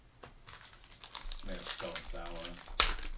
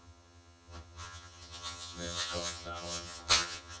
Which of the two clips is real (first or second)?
first